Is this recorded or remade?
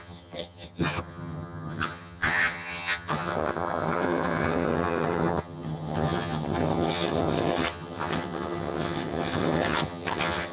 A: remade